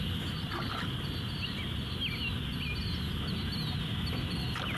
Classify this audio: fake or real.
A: real